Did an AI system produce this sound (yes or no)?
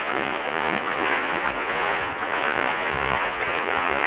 yes